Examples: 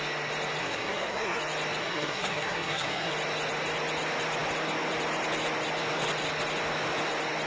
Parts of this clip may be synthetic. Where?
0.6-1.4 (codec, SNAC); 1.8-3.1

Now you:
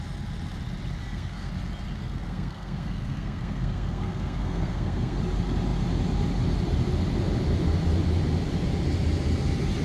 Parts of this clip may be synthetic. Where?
1.0-1.5 (codec, SNAC); 2.0-5.2

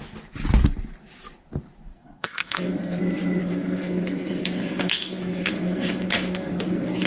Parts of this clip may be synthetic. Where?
1.9-3.0 (codec, SNAC); 3.4-7.1

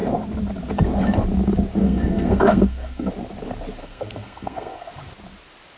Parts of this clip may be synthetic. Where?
1.8-3.1 (codec, SNAC); 3.8-4.9

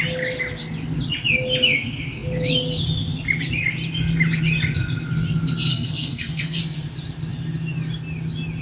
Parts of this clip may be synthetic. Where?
5.7-6.6 (codec, SNAC)